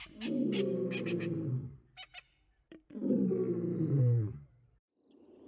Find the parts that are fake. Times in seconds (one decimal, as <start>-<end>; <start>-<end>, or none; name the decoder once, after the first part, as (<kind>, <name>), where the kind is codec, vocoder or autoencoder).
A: 2.1-5.0 (vocoder, BigVGAN v2)